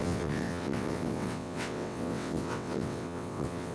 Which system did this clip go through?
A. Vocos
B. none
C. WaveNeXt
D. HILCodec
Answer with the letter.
C